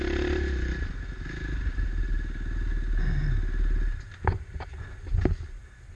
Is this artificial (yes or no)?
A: no